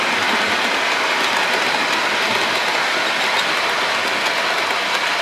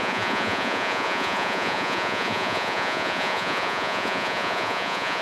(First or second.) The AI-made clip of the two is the second